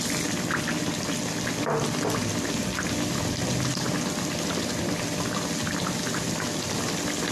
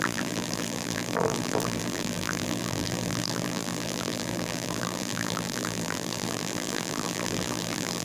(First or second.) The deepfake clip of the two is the second